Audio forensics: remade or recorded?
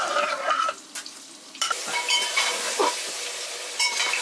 remade